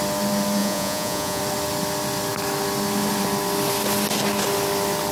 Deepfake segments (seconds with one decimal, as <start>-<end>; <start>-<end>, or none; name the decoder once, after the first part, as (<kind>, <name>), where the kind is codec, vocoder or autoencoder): 0.6-1.4 (vocoder, Vocos)